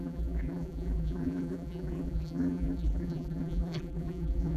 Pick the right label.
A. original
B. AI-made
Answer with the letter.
B